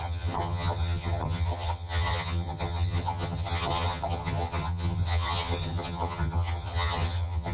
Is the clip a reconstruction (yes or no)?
yes